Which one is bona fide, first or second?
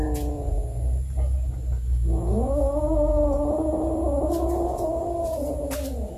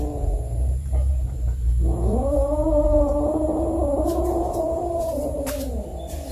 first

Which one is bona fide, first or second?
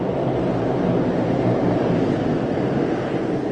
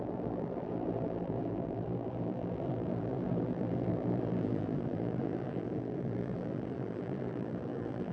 first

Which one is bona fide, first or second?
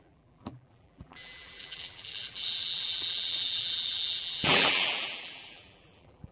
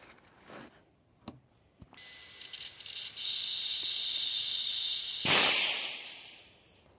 second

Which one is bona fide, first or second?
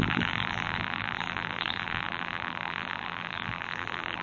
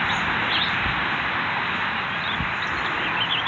second